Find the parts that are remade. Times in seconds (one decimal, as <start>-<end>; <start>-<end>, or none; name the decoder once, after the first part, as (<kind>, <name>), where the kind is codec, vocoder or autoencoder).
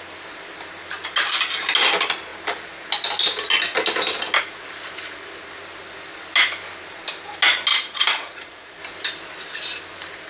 7.7-8.8 (vocoder, Vocos)